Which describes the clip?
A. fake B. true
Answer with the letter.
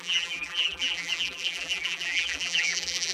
A